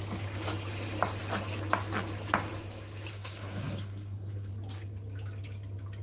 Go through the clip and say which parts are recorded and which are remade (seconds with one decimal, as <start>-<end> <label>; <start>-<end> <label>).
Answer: 0.0-3.1 recorded; 3.1-4.5 remade; 4.5-6.0 recorded